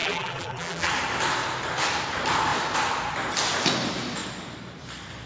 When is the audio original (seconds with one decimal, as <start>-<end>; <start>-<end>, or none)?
0.9-5.3